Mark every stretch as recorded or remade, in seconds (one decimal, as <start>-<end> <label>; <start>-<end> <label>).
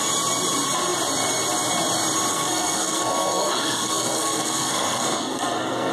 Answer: 0.0-2.3 recorded; 2.3-5.9 remade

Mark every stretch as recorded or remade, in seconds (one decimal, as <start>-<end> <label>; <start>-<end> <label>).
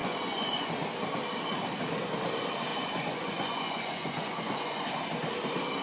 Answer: 0.0-0.7 remade; 0.7-2.7 recorded; 2.7-4.9 remade; 4.9-5.8 recorded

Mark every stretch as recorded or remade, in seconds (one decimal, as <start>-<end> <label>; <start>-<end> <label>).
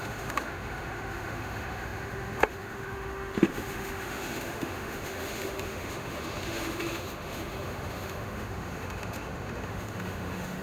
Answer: 0.0-10.6 remade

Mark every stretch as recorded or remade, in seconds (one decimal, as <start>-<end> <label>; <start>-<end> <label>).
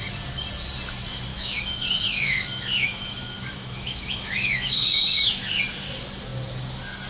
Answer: 0.0-1.3 recorded; 1.3-5.6 remade; 5.6-7.1 recorded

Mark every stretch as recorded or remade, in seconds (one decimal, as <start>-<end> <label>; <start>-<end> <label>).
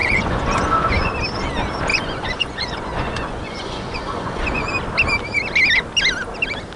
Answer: 0.0-1.1 remade; 1.1-1.9 recorded; 1.9-4.7 remade; 4.7-6.8 recorded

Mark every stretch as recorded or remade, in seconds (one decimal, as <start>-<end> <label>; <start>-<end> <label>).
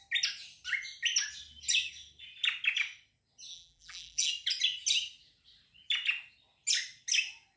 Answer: 0.0-3.5 recorded; 3.5-4.3 remade; 4.3-7.6 recorded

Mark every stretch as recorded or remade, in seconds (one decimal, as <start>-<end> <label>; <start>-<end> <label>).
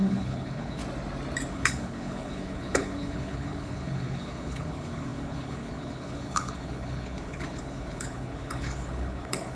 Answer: 0.0-0.8 remade; 0.8-1.5 recorded; 1.5-9.6 remade